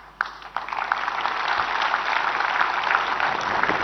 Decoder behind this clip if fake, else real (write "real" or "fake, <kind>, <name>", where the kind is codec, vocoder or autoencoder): real